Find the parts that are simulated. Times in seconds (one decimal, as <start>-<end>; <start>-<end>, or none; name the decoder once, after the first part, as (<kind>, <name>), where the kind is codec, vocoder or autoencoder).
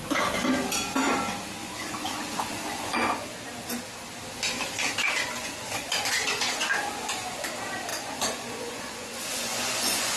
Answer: 1.6-3.3 (vocoder, Vocos); 5.2-7.5; 7.9-10.2